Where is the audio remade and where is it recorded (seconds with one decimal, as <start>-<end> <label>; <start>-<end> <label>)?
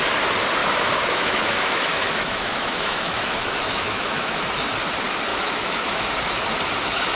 0.0-0.6 recorded; 0.6-4.5 remade; 4.5-5.3 recorded; 5.3-6.0 remade; 6.0-7.2 recorded